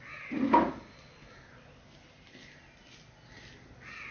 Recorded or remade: recorded